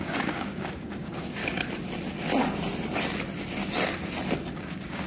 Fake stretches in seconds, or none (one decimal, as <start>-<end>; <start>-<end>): 0.0-1.4; 4.5-5.1